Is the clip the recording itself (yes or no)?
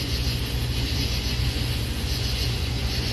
no